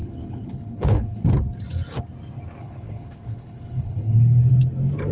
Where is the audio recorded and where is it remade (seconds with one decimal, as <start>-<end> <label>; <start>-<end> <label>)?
0.0-1.3 remade; 1.3-2.6 recorded; 2.6-4.5 remade; 4.5-5.1 recorded